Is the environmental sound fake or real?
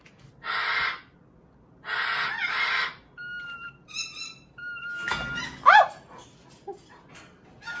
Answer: real